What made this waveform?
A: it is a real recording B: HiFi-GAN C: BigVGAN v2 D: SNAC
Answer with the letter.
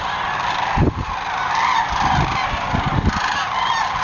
A